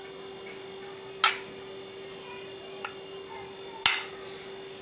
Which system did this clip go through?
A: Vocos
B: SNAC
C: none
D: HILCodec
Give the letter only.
C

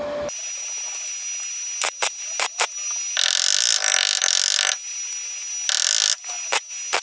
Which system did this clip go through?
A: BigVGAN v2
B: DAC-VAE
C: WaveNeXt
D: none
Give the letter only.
D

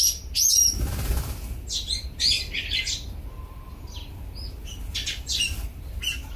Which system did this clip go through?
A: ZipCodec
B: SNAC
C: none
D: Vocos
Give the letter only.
C